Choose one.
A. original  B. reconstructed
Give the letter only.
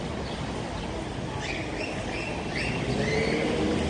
A